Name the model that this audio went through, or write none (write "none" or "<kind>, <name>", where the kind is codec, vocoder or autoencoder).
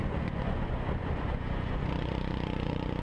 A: vocoder, Vocos